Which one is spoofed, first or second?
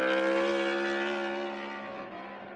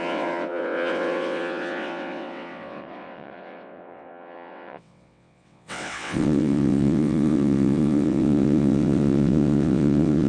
second